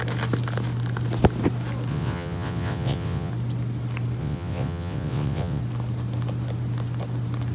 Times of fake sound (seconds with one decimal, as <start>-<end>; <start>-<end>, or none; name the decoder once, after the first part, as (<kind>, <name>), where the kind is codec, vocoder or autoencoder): 1.9-3.3 (vocoder, WaveNeXt); 4.2-5.6